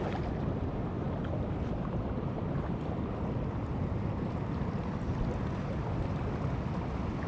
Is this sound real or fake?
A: real